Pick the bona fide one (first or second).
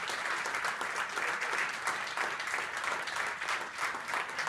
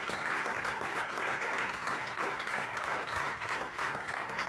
first